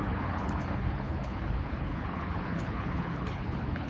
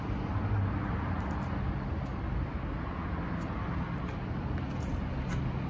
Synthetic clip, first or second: first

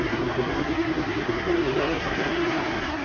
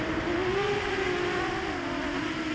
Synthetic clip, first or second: first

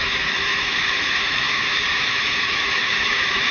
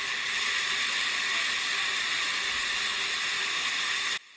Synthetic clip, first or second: first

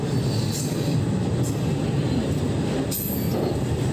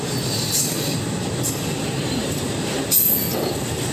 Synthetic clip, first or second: second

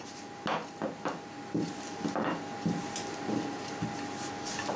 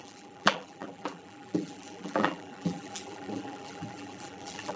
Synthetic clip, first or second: second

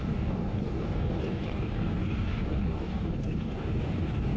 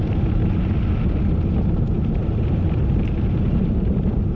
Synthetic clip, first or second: first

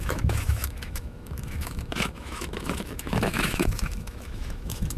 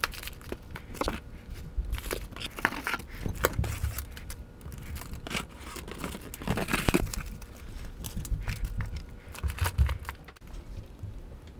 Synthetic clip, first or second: first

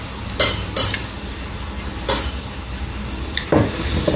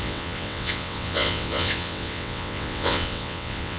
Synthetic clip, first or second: second